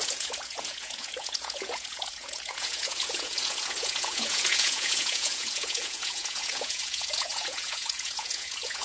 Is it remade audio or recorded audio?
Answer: remade